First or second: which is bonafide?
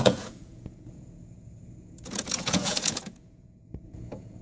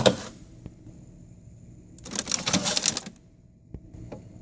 second